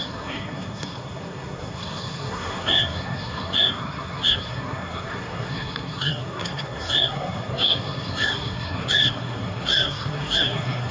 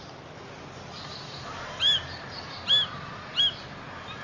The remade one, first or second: first